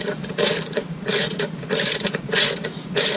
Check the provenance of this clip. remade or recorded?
remade